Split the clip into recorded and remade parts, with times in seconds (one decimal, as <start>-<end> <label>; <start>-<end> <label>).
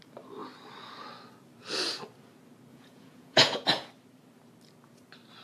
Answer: 0.0-2.7 recorded; 2.7-3.9 remade; 3.9-5.4 recorded